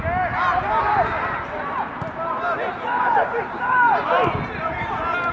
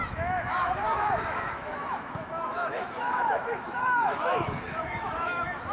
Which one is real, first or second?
first